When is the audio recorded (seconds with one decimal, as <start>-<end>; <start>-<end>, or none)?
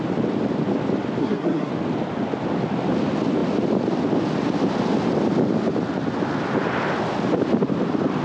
0.0-1.2; 1.7-8.2